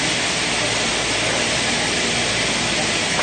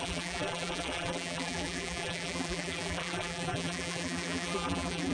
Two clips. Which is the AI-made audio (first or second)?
second